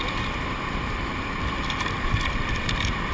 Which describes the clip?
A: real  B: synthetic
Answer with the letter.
B